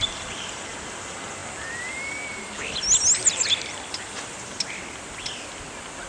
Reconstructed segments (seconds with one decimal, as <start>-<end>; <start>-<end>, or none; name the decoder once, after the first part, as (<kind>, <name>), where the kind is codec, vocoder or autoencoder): none